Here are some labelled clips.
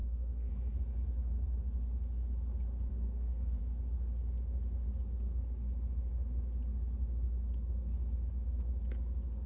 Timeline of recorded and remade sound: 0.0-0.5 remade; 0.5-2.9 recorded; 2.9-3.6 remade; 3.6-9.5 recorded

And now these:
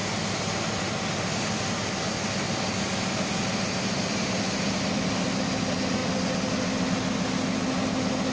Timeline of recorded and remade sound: 0.0-8.3 recorded

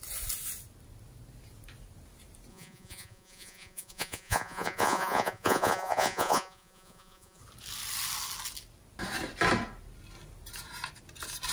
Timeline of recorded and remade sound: 0.0-2.5 recorded; 2.5-7.4 remade; 7.4-11.5 recorded

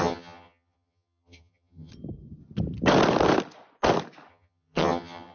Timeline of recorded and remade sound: 0.0-1.9 remade; 1.9-4.3 recorded; 4.3-5.3 remade

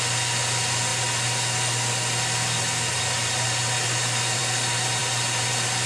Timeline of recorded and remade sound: 0.0-5.9 recorded